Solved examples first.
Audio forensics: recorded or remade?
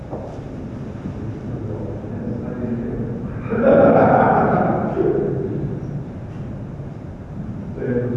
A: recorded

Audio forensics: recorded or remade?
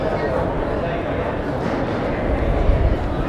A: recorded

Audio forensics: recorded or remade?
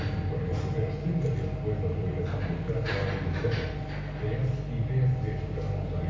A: recorded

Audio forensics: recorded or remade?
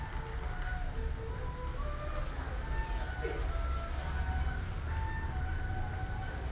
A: recorded